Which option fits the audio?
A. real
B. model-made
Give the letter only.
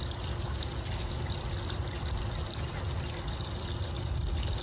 A